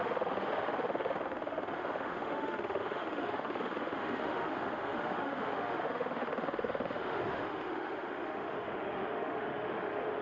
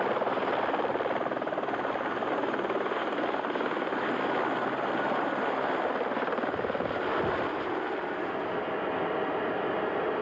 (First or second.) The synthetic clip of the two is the first